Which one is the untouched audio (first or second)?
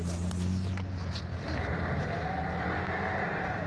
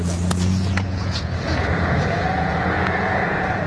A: first